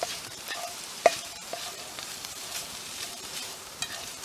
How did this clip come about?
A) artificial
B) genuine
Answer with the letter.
A